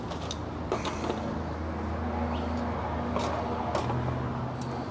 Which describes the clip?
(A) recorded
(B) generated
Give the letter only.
A